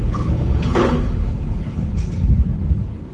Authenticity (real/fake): fake